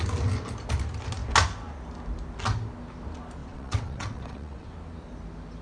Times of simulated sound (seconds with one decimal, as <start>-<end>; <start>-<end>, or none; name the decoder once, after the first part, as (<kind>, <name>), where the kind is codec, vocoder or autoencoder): 3.4-4.7 (vocoder, WaveNeXt)